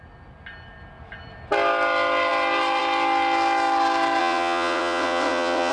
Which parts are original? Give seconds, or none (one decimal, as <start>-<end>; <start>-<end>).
0.0-4.2